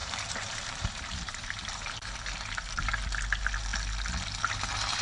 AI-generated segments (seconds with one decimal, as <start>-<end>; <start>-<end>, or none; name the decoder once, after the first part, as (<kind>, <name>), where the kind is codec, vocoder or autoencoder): 0.0-2.9 (vocoder, BigVGAN v2)